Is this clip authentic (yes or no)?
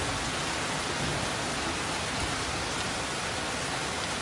yes